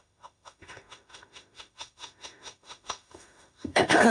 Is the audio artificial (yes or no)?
yes